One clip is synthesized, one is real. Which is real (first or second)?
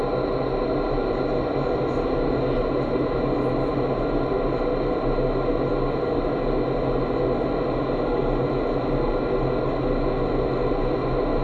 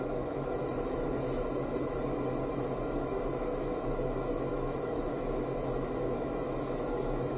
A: first